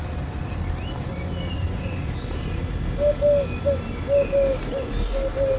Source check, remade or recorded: recorded